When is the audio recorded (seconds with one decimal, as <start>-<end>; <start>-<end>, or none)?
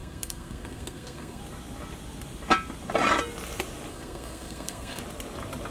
1.4-3.9; 5.0-5.7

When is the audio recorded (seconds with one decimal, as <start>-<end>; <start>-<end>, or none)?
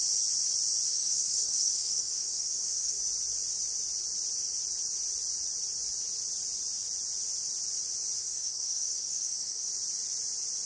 0.0-0.9; 3.0-8.2; 9.7-10.7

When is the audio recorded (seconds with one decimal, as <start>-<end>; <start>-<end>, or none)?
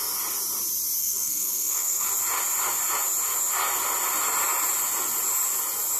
0.0-1.0; 2.1-6.0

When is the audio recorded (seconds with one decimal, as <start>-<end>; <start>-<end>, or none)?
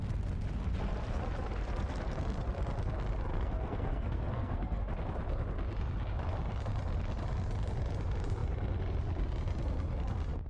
0.0-3.3; 4.8-10.5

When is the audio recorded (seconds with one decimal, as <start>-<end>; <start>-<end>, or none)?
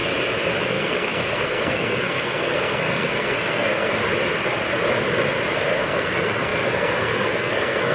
0.0-0.6; 4.0-5.7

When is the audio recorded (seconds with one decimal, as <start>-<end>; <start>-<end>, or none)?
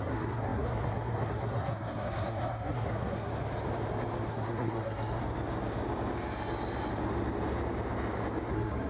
3.3-4.3; 5.2-8.5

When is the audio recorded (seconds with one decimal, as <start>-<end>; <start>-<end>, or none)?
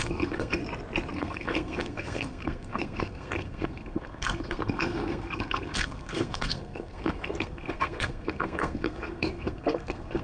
0.6-1.1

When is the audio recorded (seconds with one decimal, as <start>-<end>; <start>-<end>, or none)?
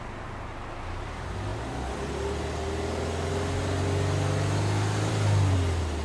0.0-6.0